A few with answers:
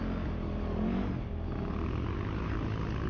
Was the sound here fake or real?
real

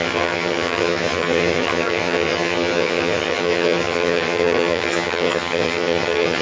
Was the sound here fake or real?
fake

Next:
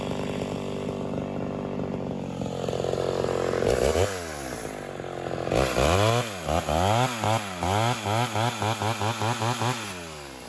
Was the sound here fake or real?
real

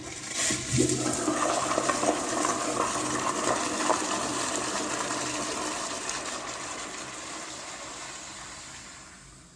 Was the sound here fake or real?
real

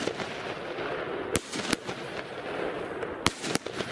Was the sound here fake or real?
real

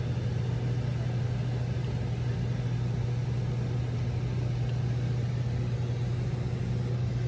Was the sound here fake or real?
real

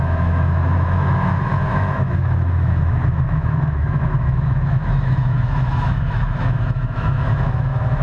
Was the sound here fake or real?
fake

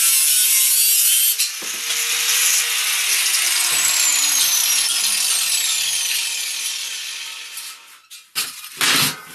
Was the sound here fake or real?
real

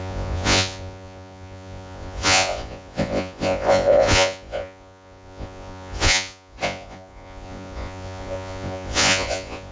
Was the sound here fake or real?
fake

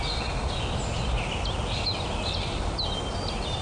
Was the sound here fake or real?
real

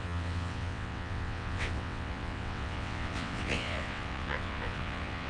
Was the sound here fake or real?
fake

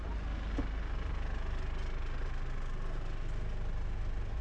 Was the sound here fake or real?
real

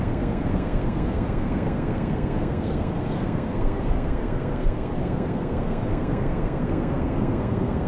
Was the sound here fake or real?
fake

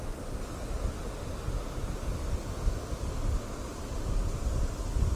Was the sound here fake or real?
real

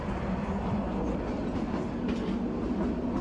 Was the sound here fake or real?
real